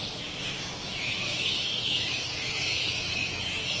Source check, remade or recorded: remade